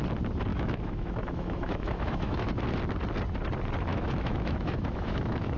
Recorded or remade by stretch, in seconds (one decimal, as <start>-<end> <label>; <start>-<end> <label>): 0.0-0.5 recorded; 0.5-2.5 remade; 2.5-3.9 recorded; 3.9-5.6 remade